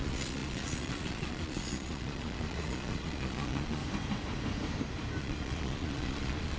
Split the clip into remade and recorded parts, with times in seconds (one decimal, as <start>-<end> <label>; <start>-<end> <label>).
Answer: 0.0-3.8 remade; 3.8-5.2 recorded; 5.2-6.6 remade